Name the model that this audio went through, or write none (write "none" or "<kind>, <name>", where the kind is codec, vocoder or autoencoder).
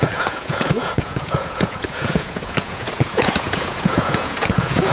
vocoder, Vocos